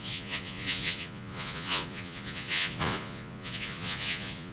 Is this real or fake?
fake